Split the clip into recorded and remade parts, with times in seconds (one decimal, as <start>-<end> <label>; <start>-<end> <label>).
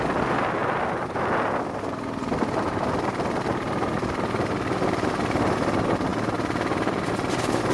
0.0-7.7 recorded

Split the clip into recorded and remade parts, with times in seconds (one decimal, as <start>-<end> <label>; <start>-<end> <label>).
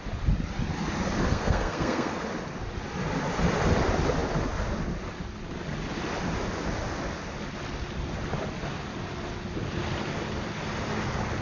0.0-1.3 recorded; 1.3-2.2 remade; 2.2-11.4 recorded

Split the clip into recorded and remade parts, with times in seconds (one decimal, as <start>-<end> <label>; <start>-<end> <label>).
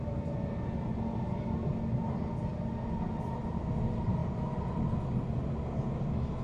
0.0-6.4 recorded